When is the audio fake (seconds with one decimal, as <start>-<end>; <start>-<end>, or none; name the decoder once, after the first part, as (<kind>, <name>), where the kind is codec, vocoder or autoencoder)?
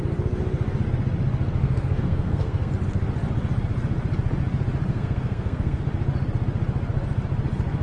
1.6-2.7 (codec, SNAC); 4.9-5.8